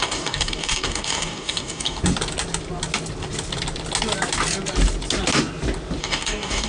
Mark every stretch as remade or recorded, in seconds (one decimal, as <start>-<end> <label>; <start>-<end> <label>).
0.0-2.0 remade; 2.0-6.0 recorded; 6.0-6.7 remade